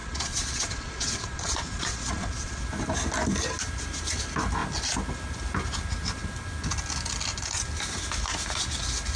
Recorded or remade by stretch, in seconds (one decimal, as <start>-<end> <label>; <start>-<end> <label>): 0.0-2.6 remade; 2.6-9.2 recorded